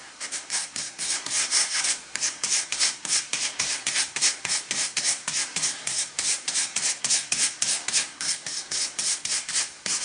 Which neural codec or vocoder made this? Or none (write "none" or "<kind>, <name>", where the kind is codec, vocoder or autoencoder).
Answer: codec, SNAC